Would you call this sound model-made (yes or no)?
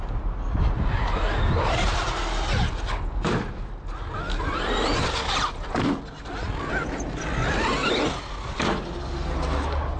no